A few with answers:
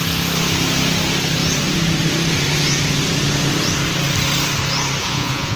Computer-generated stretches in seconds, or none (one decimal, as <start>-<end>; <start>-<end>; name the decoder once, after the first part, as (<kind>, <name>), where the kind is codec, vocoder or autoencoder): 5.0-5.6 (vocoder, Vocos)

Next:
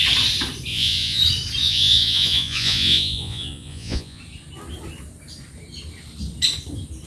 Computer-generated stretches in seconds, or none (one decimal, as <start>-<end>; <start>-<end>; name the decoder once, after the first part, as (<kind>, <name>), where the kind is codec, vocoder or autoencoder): 0.7-1.2 (vocoder, Vocos); 1.6-4.2

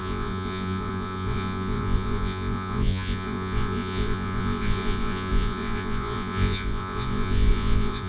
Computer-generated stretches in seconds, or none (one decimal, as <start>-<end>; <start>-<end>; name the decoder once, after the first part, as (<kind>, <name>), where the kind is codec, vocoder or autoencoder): 0.0-8.1 (vocoder, Vocos)

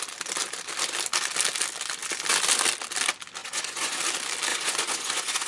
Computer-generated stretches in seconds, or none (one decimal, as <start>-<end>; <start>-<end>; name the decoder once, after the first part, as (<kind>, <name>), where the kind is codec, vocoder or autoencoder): 3.4-4.0 (vocoder, Vocos); 4.5-5.5

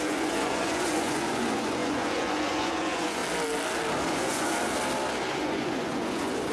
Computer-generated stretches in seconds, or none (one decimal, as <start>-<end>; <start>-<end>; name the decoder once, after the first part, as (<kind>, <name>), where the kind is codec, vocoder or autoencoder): 0.0-3.2 (vocoder, Vocos); 4.1-4.5; 5.3-6.5